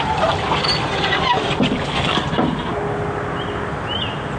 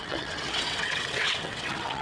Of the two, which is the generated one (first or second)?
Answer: second